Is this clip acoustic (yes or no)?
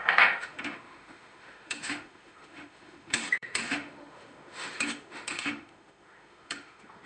no